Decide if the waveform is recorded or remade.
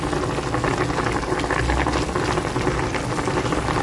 recorded